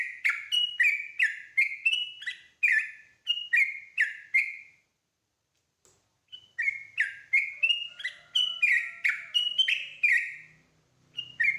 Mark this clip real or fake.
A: real